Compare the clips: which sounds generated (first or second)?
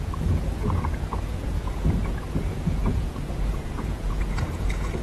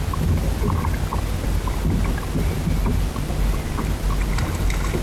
first